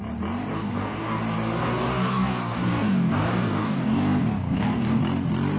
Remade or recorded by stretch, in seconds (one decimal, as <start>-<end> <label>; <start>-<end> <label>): 0.0-0.5 recorded; 0.5-1.2 remade; 1.2-1.6 recorded; 1.6-5.0 remade; 5.0-5.6 recorded